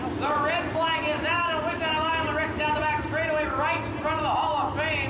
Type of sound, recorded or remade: recorded